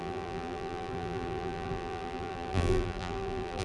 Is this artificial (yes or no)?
yes